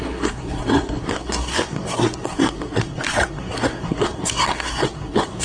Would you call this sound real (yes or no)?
no